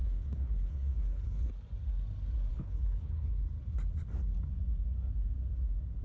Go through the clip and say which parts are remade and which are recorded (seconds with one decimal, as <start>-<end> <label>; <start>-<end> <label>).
0.0-1.5 remade; 1.5-2.5 recorded; 2.5-3.4 remade; 3.4-6.0 recorded